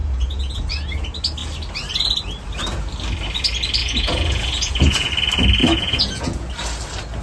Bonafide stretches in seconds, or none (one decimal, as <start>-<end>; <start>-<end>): 0.7-3.8; 5.1-5.6; 6.5-7.2